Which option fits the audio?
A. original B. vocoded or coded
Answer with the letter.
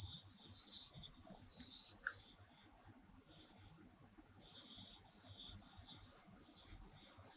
A